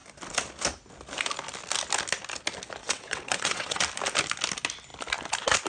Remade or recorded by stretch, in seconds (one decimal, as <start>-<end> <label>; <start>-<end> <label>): 0.0-2.8 recorded; 2.8-3.8 remade; 3.8-5.7 recorded